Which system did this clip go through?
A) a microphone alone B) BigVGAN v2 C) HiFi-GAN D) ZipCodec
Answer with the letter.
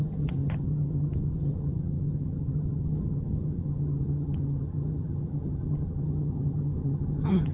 C